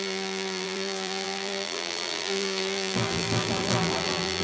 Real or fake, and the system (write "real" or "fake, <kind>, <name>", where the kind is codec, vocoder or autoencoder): fake, vocoder, BigVGAN v2